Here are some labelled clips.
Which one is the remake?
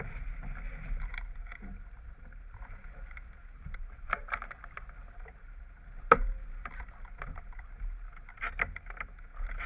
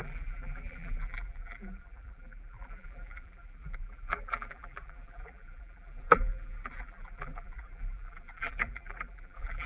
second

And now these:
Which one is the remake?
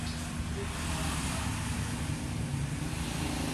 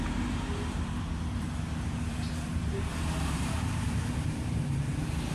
second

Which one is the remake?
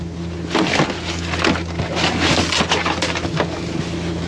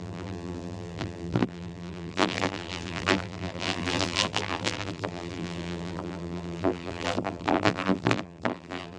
second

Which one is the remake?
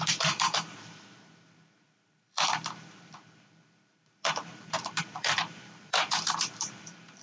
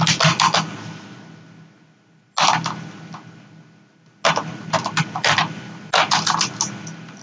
first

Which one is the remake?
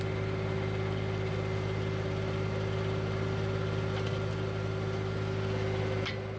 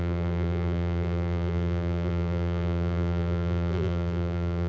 second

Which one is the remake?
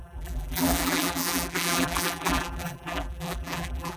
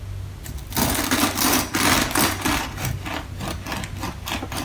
first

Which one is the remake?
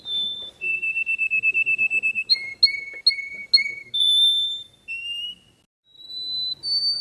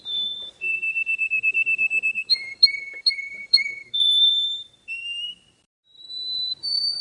second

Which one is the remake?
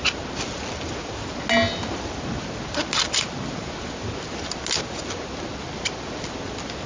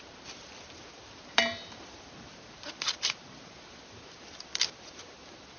second